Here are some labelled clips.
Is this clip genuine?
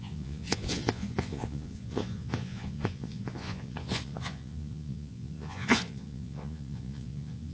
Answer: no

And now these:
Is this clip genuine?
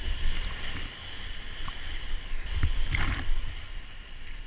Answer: yes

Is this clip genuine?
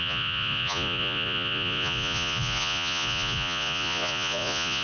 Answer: no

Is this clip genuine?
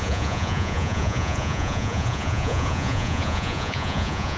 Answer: no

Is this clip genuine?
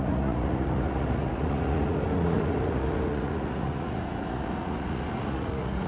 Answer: no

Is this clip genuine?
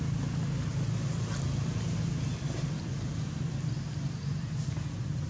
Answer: yes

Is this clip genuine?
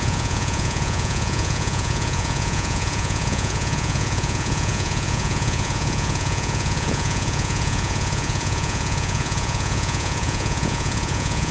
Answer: no